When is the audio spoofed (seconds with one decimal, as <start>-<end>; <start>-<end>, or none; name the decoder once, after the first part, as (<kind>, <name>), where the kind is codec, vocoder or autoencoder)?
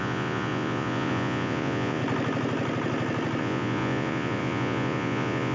0.0-2.0 (vocoder, Vocos); 3.4-5.5